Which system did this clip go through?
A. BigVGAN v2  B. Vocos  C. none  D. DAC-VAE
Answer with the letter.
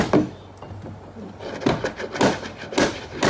C